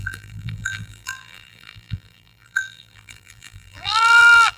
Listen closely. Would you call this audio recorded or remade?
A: remade